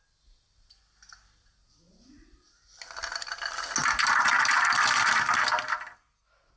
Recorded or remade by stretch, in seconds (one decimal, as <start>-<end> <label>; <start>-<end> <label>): 0.0-6.6 recorded